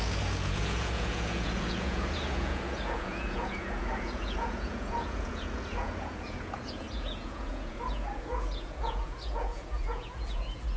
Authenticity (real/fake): fake